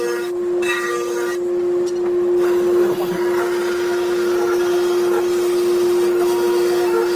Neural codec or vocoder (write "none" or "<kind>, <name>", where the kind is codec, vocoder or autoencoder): none